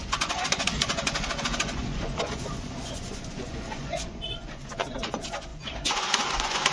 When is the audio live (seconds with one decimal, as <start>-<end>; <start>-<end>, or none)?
none